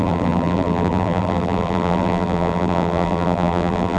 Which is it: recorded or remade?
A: remade